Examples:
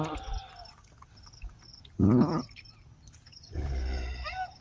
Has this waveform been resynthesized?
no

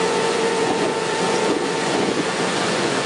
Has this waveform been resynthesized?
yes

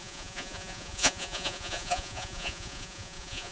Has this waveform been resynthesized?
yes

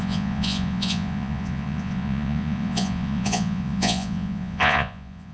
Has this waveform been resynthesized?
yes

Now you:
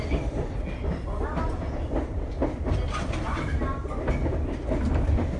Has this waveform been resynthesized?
no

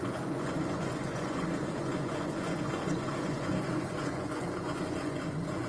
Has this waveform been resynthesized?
yes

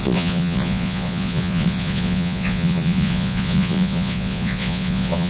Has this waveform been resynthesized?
yes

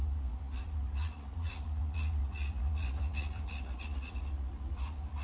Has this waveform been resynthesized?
yes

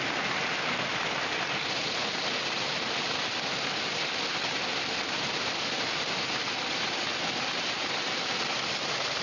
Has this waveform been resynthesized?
no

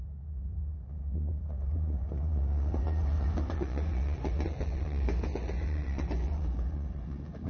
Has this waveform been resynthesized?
yes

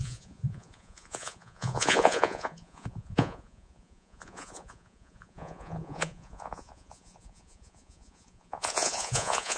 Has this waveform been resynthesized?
yes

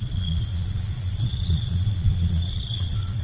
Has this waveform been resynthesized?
yes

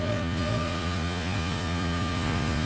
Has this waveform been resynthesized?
yes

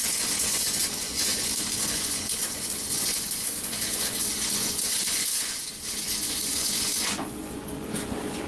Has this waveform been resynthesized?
yes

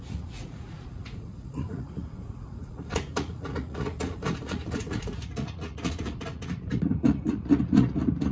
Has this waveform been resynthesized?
yes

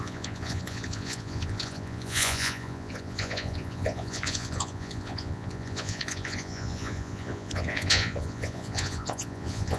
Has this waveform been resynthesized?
yes